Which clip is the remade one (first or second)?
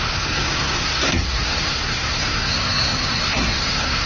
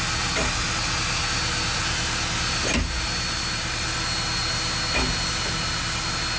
first